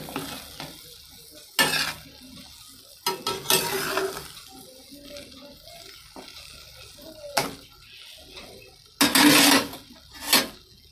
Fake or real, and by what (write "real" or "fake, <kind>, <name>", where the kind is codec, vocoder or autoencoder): real